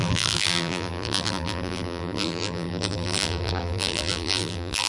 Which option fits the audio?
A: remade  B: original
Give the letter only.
A